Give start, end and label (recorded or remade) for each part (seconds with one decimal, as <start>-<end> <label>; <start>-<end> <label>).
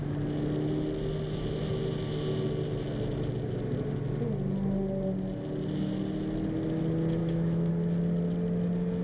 0.0-7.2 recorded; 7.2-7.7 remade; 7.7-9.0 recorded